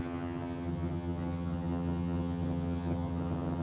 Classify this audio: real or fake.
fake